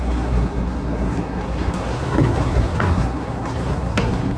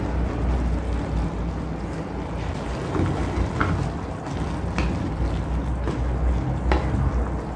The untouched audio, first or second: second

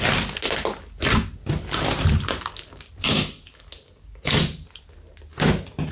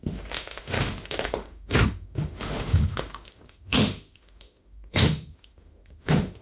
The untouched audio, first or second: first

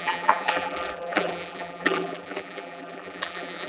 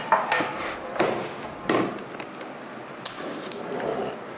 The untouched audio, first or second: second